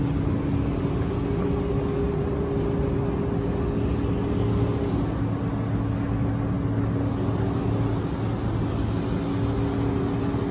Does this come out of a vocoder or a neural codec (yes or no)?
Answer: no